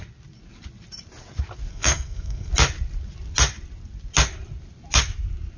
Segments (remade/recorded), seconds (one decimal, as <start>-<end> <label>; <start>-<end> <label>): 0.0-1.7 recorded; 1.7-2.5 remade; 2.5-5.6 recorded